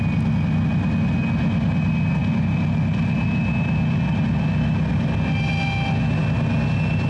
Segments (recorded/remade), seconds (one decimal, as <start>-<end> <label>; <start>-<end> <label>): 0.0-7.1 recorded